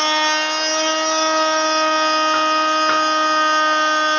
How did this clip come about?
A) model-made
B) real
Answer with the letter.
B